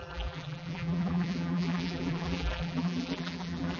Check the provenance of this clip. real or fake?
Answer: fake